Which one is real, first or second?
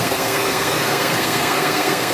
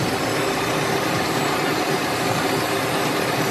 second